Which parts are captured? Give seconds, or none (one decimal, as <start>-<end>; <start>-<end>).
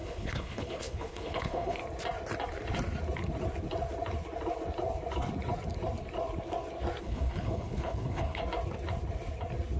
1.8-7.0; 8.4-9.8